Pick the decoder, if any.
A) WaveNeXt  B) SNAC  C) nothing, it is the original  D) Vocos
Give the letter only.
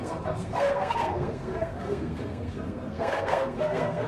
B